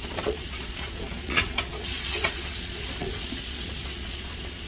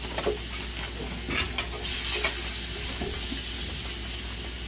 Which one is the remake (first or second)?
first